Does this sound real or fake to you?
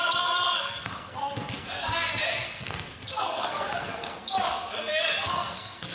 fake